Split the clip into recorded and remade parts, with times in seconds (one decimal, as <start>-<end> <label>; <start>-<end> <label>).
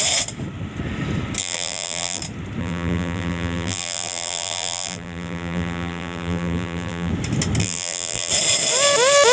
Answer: 0.0-1.4 recorded; 1.4-2.2 remade; 2.2-2.6 recorded; 2.6-7.1 remade; 7.1-7.6 recorded; 7.6-8.3 remade; 8.3-9.3 recorded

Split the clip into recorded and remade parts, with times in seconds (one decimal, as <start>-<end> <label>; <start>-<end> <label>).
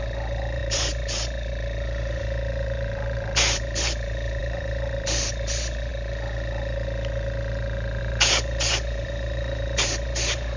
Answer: 0.0-5.9 remade; 5.9-8.0 recorded; 8.0-10.6 remade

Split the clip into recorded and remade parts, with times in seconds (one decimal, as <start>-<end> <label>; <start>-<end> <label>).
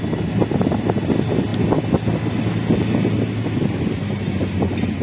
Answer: 0.0-5.0 recorded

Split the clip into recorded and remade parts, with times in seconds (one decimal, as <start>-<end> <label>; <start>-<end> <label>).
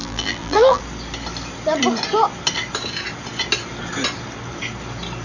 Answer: 0.0-0.8 remade; 0.8-5.2 recorded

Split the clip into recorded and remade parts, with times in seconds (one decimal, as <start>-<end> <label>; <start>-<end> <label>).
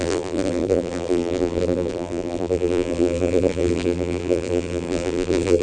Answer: 0.0-5.6 remade